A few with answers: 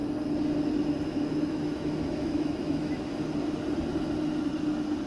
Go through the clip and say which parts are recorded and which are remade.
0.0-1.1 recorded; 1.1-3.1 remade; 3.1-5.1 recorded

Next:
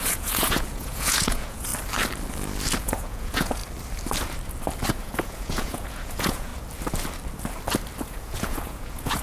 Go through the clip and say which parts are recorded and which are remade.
0.0-1.7 remade; 1.7-2.8 recorded; 2.8-3.6 remade; 3.6-5.0 recorded; 5.0-6.5 remade; 6.5-8.0 recorded; 8.0-9.2 remade

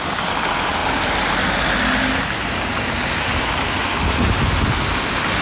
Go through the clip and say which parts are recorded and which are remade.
0.0-5.4 recorded